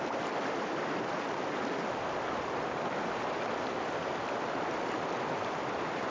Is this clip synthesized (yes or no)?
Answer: no